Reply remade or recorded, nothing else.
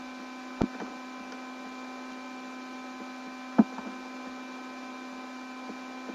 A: recorded